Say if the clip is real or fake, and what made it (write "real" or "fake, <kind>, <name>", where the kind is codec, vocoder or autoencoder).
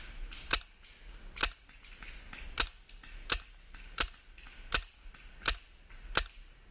real